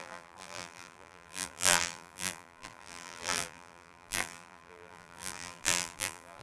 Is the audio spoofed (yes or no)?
yes